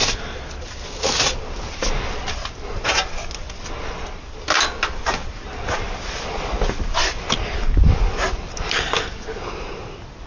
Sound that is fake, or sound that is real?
real